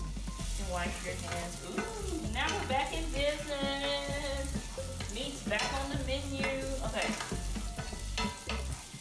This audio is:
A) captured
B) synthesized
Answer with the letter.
A